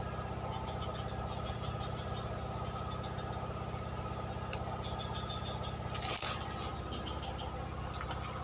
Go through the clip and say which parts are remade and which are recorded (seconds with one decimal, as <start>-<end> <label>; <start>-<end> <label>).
0.0-8.4 recorded